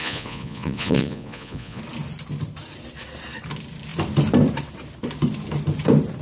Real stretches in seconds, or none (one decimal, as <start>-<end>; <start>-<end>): 1.8-6.2